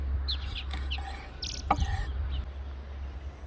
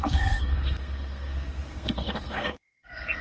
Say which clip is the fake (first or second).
second